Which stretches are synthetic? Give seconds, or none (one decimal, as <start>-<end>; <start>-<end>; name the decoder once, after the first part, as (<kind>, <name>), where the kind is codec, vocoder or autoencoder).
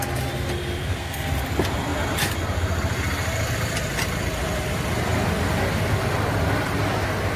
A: 0.8-1.3 (codec, SNAC)